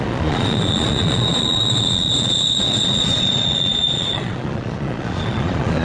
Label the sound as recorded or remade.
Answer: remade